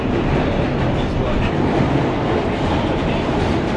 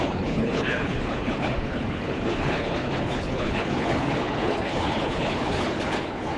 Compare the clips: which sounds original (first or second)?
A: first